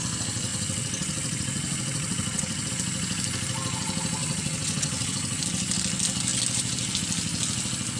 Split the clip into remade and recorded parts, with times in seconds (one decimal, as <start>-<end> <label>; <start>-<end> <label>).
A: 0.0-0.5 recorded; 0.5-2.7 remade; 2.7-4.2 recorded; 4.2-5.4 remade; 5.4-8.0 recorded